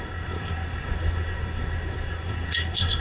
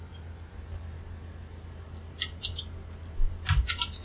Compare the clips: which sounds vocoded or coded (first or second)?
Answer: first